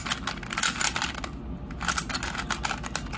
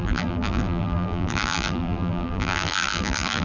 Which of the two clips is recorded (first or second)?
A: first